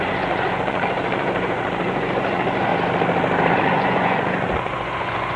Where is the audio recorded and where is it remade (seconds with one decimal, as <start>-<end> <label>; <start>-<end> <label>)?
0.0-2.7 remade; 2.7-3.5 recorded; 3.5-5.4 remade